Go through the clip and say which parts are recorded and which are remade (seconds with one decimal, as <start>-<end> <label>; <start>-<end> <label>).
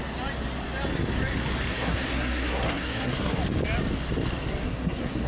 0.0-1.7 recorded; 1.7-3.4 remade; 3.4-4.6 recorded; 4.6-5.3 remade